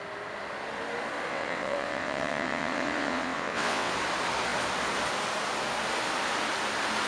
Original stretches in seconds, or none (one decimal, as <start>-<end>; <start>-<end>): 0.0-1.3; 3.9-7.1